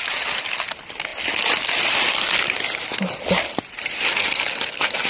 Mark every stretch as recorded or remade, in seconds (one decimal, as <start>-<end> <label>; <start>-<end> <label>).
0.0-5.1 recorded